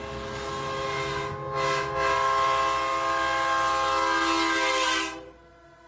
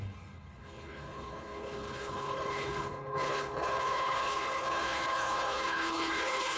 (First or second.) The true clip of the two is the first